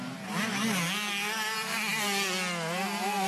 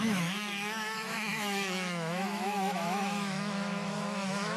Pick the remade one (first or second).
second